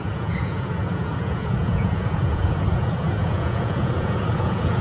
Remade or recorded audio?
remade